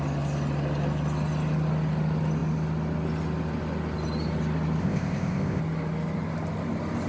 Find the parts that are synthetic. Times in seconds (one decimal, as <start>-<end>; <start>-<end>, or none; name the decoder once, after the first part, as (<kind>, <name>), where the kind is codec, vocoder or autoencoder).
4.8-5.6 (codec, ZipCodec)